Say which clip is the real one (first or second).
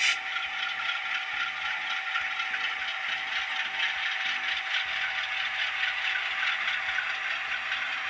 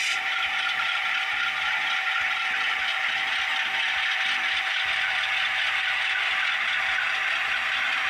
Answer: first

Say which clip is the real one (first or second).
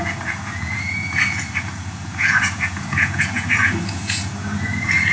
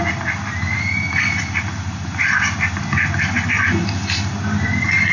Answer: second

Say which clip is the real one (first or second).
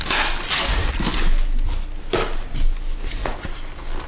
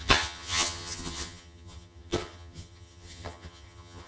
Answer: first